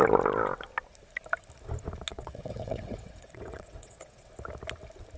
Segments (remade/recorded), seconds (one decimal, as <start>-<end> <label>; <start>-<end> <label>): 0.0-2.1 recorded; 2.1-4.3 remade; 4.3-5.2 recorded